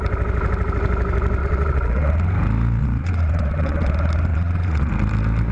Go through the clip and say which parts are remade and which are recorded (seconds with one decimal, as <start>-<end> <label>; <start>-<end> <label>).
0.0-1.4 recorded; 1.4-2.1 remade; 2.1-2.8 recorded; 2.8-3.9 remade; 3.9-4.3 recorded; 4.3-4.9 remade; 4.9-5.5 recorded